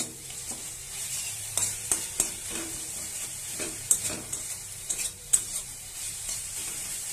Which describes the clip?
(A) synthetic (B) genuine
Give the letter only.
A